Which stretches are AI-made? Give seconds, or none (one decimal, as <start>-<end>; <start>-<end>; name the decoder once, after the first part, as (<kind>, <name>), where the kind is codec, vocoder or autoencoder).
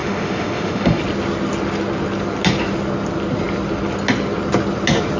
0.0-1.0 (autoencoder, DAC-VAE)